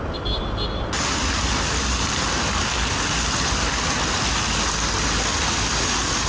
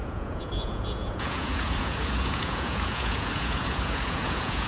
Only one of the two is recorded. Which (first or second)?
first